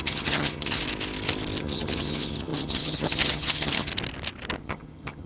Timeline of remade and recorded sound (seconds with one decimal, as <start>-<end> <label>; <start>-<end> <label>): 0.0-0.8 remade; 0.8-1.6 recorded; 1.6-3.9 remade; 3.9-4.6 recorded; 4.6-5.3 remade